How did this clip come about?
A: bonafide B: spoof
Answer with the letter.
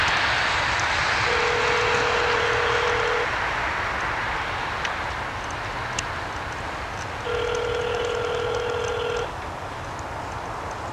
A